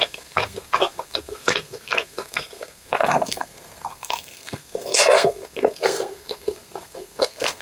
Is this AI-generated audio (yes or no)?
yes